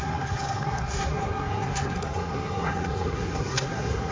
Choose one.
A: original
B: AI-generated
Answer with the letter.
B